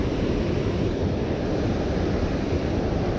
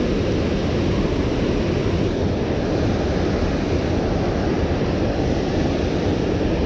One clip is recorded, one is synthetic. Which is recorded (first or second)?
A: second